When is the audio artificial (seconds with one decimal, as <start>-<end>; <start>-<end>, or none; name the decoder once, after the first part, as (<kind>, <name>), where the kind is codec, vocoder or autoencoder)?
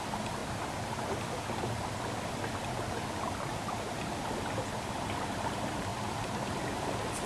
none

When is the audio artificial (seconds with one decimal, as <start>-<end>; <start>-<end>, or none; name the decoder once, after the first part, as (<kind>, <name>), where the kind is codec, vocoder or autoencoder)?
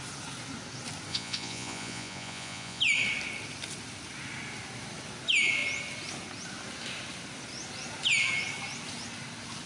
1.1-2.8 (vocoder, Vocos)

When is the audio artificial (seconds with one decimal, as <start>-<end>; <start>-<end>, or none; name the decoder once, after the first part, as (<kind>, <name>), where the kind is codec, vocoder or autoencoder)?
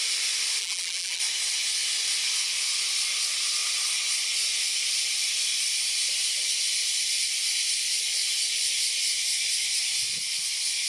0.6-1.2 (vocoder, BigVGAN v2)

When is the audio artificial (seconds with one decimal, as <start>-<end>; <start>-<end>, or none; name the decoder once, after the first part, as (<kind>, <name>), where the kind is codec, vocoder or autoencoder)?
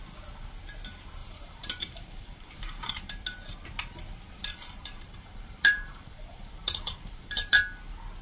1.2-2.9 (vocoder, BigVGAN v2); 4.4-7.6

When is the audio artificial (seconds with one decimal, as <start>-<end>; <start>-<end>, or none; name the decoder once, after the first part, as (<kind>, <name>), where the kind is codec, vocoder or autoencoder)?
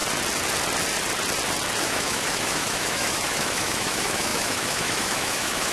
1.8-5.7 (autoencoder, DAC-VAE)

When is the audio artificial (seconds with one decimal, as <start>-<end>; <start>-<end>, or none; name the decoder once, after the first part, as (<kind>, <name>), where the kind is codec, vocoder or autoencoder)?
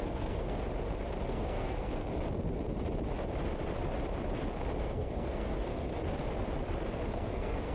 0.0-0.7 (codec, SNAC); 1.3-2.1; 4.8-5.9; 7.1-7.7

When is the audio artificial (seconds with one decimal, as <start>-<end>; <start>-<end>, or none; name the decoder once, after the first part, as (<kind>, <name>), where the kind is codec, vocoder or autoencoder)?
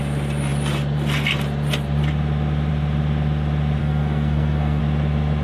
3.8-4.8 (codec, SNAC)